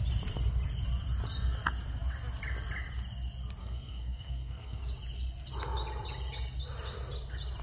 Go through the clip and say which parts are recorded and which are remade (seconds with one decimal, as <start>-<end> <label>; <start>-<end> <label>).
0.0-3.6 recorded; 3.6-4.8 remade; 4.8-7.6 recorded

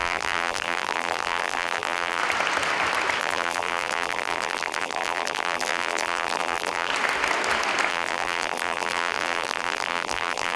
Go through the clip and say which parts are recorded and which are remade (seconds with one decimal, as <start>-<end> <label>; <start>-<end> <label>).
0.0-2.2 remade; 2.2-3.2 recorded; 3.2-6.9 remade; 6.9-7.9 recorded; 7.9-10.6 remade

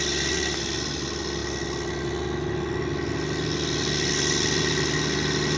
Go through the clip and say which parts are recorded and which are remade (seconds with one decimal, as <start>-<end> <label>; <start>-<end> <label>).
0.0-5.6 recorded